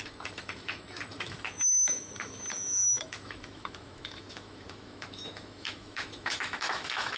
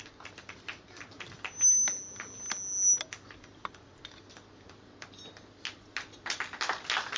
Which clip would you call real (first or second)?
second